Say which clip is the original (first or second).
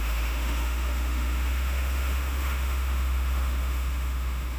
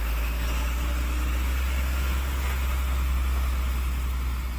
second